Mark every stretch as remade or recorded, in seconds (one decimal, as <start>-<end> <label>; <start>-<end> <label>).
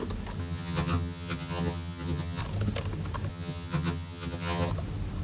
0.0-0.4 recorded; 0.4-2.4 remade; 2.4-3.3 recorded; 3.3-4.7 remade; 4.7-5.2 recorded